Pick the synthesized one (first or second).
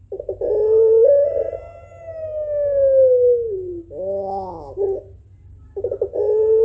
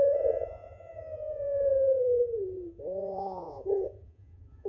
second